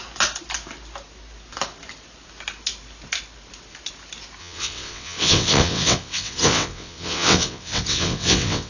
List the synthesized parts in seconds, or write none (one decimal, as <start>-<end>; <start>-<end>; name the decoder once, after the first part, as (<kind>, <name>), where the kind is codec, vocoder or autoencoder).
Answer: 4.4-8.7 (vocoder, WaveNeXt)